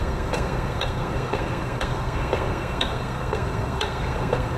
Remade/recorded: remade